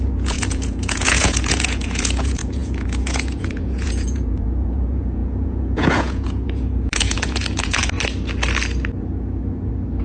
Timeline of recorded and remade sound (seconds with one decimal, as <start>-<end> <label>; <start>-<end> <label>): 0.0-7.8 remade; 7.8-10.0 recorded